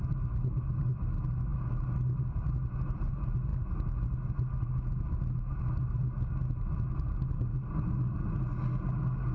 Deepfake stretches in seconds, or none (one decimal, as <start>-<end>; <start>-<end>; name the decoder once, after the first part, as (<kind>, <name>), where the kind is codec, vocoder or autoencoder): none